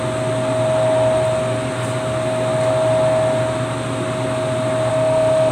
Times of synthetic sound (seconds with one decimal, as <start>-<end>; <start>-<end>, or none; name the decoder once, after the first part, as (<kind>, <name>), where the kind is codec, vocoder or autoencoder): 4.9-5.5 (autoencoder, DAC-VAE)